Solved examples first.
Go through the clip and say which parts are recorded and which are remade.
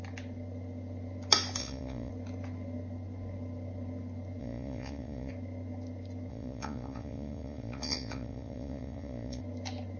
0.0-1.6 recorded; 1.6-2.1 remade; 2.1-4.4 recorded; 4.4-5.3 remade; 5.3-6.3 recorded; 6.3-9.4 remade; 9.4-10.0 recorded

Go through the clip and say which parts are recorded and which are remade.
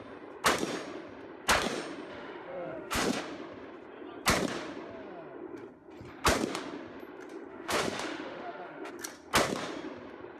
0.0-2.1 recorded; 2.1-3.2 remade; 3.2-7.5 recorded; 7.5-8.9 remade; 8.9-10.4 recorded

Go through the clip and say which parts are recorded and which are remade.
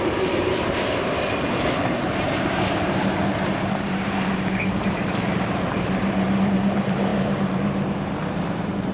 0.0-8.9 remade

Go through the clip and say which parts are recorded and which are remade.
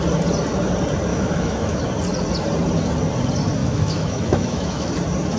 0.0-1.1 recorded; 1.1-1.8 remade; 1.8-3.6 recorded; 3.6-4.9 remade; 4.9-5.4 recorded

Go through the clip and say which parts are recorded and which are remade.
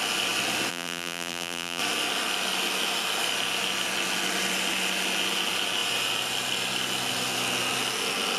0.0-0.7 recorded; 0.7-1.8 remade; 1.8-8.4 recorded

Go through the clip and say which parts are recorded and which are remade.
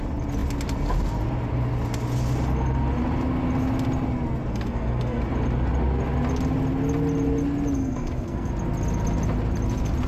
0.0-4.5 recorded; 4.5-5.2 remade; 5.2-7.8 recorded; 7.8-8.5 remade; 8.5-10.1 recorded